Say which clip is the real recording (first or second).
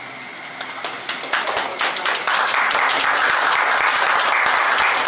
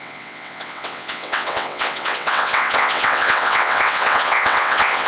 first